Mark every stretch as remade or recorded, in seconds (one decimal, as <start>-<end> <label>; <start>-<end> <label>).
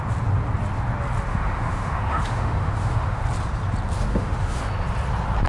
0.0-1.3 recorded; 1.3-3.2 remade; 3.2-4.1 recorded; 4.1-4.6 remade; 4.6-5.5 recorded